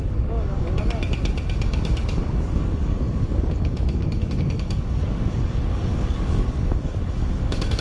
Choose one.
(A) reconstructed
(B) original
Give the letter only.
A